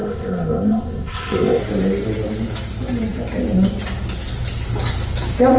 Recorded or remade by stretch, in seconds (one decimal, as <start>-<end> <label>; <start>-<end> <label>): 0.0-1.6 remade; 1.6-5.6 recorded